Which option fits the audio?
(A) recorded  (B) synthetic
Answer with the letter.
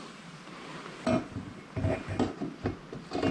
A